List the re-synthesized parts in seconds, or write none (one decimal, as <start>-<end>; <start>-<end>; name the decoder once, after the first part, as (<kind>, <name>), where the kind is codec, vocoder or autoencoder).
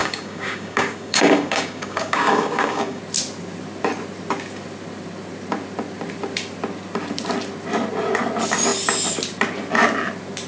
0.0-3.0 (codec, DAC)